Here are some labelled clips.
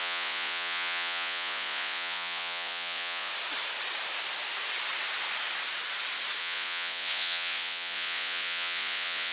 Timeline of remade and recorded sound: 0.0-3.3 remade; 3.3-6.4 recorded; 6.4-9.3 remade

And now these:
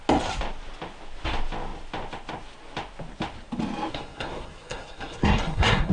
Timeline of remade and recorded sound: 0.0-3.9 recorded; 3.9-5.9 remade

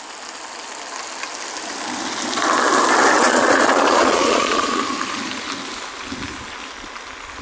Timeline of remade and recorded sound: 0.0-3.2 recorded; 3.2-4.8 remade; 4.8-7.4 recorded

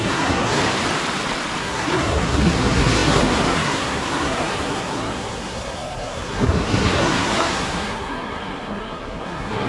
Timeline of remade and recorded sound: 0.0-0.6 remade; 0.6-1.6 recorded; 1.6-9.7 remade

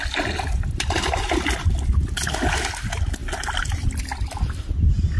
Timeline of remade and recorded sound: 0.0-1.6 remade; 1.6-3.2 recorded; 3.2-3.9 remade; 3.9-5.2 recorded